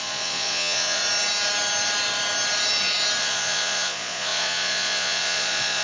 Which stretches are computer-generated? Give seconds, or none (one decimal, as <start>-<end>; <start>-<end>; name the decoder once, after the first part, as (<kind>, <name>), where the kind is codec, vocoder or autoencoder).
0.0-1.0 (vocoder, Vocos); 3.2-5.8